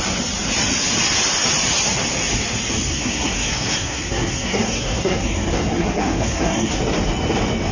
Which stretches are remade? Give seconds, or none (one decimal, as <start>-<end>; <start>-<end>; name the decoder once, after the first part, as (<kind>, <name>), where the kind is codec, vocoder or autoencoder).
2.9-6.8 (codec, SNAC)